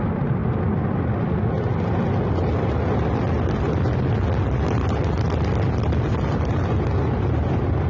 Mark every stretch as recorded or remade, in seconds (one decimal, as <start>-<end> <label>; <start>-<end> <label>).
0.0-7.9 recorded